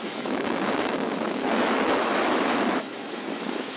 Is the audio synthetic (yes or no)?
yes